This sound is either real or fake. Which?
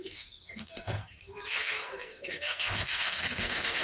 fake